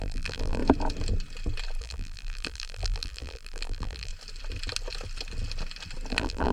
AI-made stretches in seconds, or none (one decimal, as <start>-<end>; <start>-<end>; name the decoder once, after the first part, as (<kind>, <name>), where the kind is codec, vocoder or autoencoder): 0.0-0.6 (vocoder, BigVGAN v2); 1.8-4.1; 6.1-6.5